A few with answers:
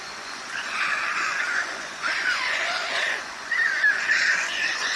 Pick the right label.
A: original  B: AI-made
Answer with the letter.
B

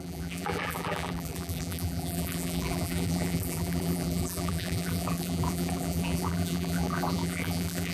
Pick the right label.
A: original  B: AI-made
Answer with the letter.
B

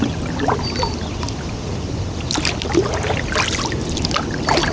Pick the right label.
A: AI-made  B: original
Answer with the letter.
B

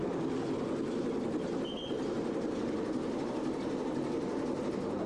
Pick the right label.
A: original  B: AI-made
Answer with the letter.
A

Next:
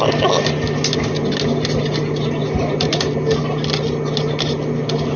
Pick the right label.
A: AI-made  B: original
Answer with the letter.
B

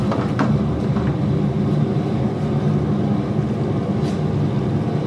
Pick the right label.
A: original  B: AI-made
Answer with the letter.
A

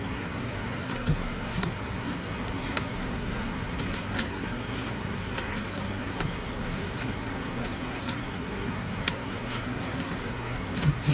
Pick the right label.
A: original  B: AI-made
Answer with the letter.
B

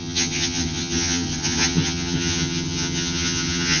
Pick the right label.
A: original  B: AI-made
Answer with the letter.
B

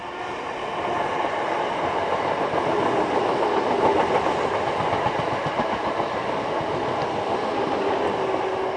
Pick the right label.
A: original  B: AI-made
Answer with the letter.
A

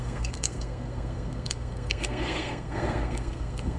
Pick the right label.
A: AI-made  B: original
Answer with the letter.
A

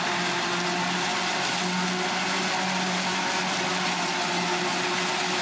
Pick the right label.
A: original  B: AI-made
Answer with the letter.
A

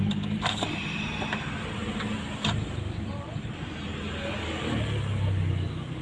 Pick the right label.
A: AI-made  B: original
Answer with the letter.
B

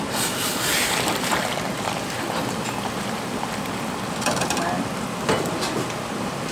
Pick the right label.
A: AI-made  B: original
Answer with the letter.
B